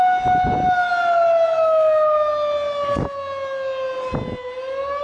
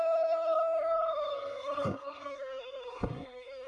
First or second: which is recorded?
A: first